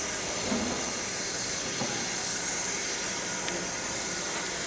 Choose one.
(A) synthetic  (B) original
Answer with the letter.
B